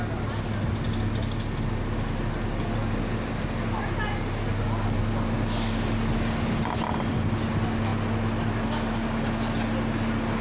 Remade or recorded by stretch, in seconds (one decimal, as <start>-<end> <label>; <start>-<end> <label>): 0.0-10.4 recorded